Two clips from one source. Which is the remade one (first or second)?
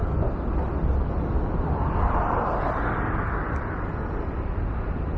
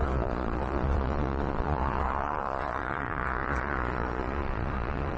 second